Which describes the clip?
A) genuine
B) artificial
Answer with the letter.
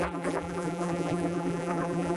B